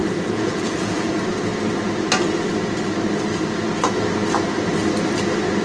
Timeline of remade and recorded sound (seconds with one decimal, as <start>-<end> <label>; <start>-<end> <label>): 0.0-1.1 remade; 1.1-5.6 recorded